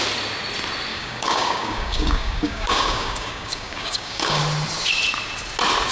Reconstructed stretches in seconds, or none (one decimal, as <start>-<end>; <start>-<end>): 0.9-4.4